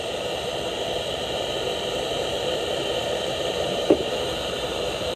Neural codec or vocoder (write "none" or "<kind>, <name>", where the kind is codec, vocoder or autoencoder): vocoder, BigVGAN v2